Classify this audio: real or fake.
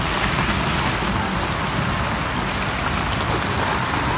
real